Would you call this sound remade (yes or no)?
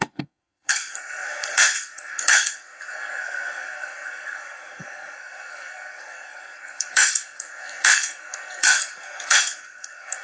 yes